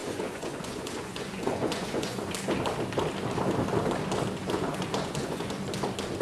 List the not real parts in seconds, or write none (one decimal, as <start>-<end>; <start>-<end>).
0.0-2.2; 4.4-5.6